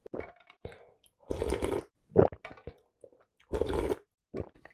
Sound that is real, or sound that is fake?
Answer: real